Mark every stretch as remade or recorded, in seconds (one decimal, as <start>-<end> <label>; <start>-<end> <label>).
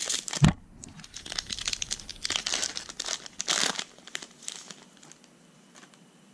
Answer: 0.0-6.3 recorded